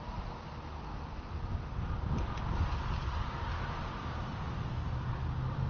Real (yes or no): yes